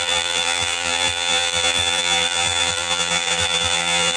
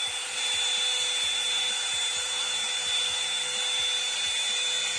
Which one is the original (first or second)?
second